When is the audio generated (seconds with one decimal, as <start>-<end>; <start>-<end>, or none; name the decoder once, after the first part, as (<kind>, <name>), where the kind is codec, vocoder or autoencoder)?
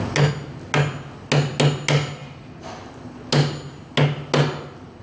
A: none